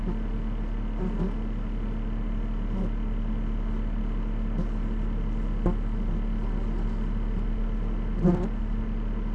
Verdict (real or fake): real